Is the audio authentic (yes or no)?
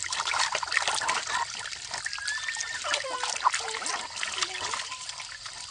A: yes